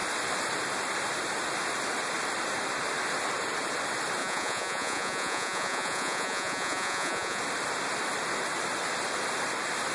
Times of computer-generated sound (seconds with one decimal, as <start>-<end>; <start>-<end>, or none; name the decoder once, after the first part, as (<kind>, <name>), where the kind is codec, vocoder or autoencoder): 4.2-7.4 (vocoder, Vocos)